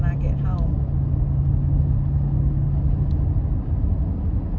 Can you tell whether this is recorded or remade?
recorded